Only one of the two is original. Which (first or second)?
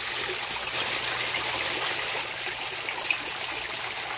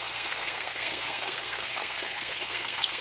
first